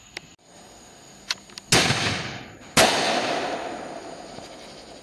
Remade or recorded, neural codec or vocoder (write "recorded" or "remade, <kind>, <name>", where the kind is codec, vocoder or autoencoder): recorded